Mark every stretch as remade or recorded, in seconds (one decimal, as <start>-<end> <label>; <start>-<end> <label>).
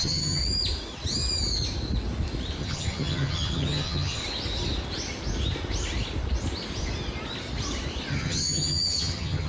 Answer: 0.0-0.4 remade; 0.4-2.6 recorded; 2.6-4.2 remade; 4.2-8.1 recorded; 8.1-9.5 remade